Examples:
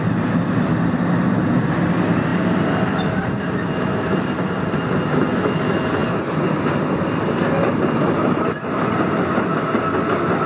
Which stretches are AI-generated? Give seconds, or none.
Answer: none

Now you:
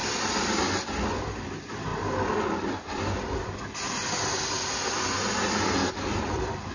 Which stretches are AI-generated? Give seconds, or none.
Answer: 1.5-1.9 (vocoder, BigVGAN v2); 5.9-6.7